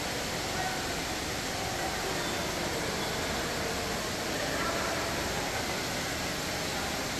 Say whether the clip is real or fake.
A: real